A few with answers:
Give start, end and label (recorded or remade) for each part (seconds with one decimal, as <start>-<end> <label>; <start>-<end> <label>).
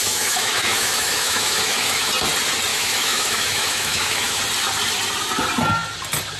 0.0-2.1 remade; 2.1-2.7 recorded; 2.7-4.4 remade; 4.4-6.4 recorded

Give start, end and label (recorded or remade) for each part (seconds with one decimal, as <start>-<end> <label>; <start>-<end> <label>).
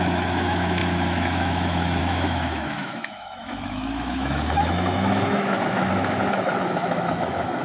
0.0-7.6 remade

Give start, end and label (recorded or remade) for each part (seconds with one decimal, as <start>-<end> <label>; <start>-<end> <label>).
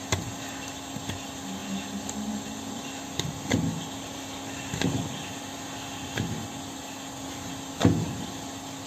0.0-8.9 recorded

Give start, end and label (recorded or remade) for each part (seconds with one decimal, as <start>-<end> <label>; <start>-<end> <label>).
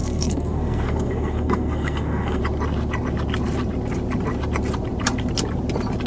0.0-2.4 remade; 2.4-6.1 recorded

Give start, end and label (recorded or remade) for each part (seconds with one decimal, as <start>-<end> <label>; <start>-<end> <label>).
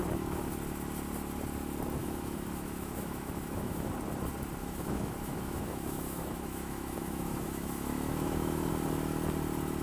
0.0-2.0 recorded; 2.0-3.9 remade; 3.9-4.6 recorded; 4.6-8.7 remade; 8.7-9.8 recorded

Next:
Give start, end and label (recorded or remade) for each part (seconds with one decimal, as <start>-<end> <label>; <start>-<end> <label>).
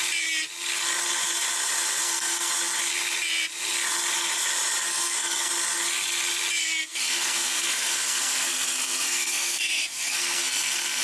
0.0-2.0 recorded; 2.0-2.5 remade; 2.5-4.8 recorded; 4.8-5.5 remade; 5.5-6.6 recorded; 6.6-11.0 remade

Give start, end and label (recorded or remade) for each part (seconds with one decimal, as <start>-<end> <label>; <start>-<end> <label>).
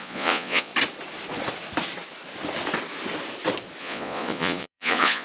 0.0-0.7 remade; 0.7-3.8 recorded; 3.8-5.2 remade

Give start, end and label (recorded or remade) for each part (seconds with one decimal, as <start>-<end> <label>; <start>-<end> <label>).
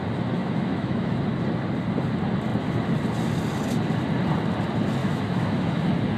0.0-0.4 recorded; 0.4-1.2 remade; 1.2-5.0 recorded; 5.0-5.8 remade; 5.8-6.2 recorded